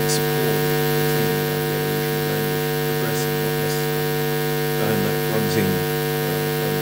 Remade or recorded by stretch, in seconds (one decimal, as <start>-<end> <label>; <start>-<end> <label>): 0.0-6.8 recorded